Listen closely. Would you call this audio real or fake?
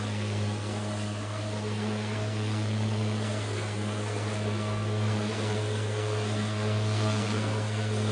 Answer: fake